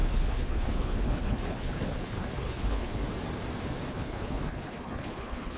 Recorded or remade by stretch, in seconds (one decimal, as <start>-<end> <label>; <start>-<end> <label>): 0.0-3.0 remade; 3.0-3.9 recorded; 3.9-5.6 remade